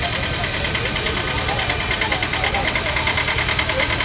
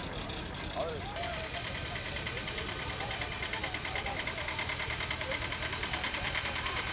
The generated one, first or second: second